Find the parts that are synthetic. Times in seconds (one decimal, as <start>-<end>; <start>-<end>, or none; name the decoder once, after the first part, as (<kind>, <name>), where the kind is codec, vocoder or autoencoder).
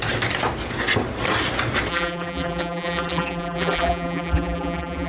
1.9-5.1 (vocoder, BigVGAN v2)